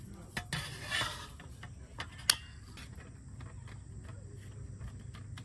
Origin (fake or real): real